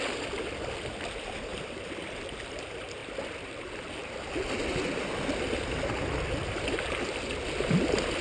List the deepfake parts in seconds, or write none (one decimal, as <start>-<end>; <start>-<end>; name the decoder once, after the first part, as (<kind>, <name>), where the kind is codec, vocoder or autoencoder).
1.5-2.5 (vocoder, BigVGAN v2); 3.0-3.6

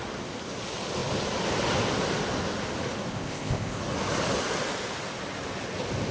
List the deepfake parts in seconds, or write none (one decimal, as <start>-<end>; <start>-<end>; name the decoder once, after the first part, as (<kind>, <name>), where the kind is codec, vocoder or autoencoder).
3.1-3.8 (codec, ZipCodec)

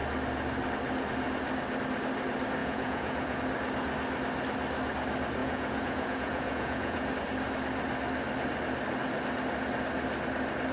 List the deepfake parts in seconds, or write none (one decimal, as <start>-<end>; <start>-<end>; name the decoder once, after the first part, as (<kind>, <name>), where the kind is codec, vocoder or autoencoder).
2.6-3.4 (vocoder, Vocos); 5.4-7.1

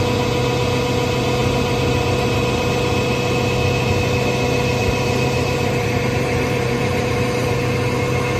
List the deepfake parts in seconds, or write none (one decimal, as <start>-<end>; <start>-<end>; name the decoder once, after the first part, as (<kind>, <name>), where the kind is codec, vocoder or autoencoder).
1.4-2.7 (vocoder, BigVGAN v2); 4.8-7.6

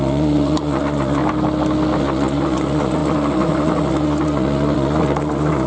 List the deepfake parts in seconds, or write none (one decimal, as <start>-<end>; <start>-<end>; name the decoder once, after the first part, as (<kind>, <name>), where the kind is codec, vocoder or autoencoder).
0.0-1.2 (vocoder, Vocos); 2.0-5.7